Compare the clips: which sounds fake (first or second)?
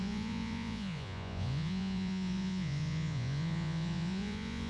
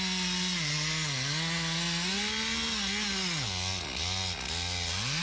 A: first